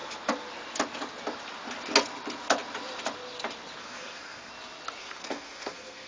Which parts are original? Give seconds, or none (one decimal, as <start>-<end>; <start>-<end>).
0.0-3.8; 4.5-5.0